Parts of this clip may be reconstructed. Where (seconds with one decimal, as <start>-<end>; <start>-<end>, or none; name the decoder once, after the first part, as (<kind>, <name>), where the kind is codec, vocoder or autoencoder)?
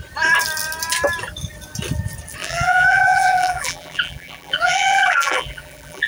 2.4-6.1 (vocoder, BigVGAN v2)